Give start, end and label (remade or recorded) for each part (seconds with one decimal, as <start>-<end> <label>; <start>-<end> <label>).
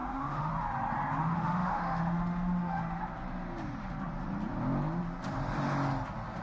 0.0-0.5 remade; 0.5-1.2 recorded; 1.2-3.0 remade; 3.0-6.4 recorded